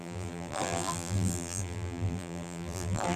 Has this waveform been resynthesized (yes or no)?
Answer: yes